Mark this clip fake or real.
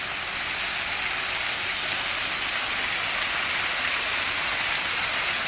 real